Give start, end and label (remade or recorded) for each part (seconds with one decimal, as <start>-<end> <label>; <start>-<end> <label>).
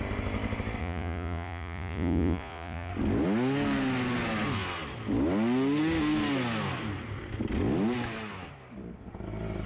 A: 0.0-0.8 recorded; 0.8-2.9 remade; 2.9-9.7 recorded